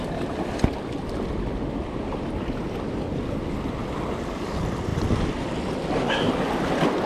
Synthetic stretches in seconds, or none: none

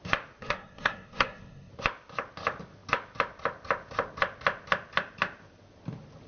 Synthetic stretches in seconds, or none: 0.4-1.7 (codec, SNAC)

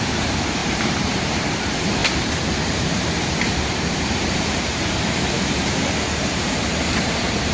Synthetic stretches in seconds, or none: 0.0-7.5 (vocoder, BigVGAN v2)

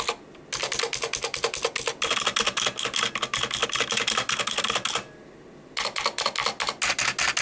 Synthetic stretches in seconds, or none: none